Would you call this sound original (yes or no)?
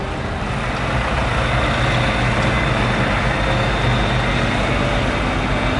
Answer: yes